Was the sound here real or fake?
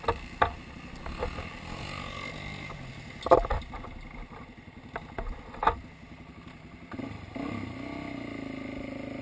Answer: real